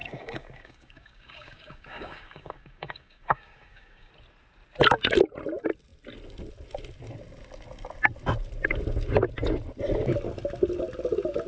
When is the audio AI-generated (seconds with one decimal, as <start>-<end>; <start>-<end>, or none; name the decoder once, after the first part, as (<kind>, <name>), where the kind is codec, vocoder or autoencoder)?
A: 0.0-4.1 (codec, DAC)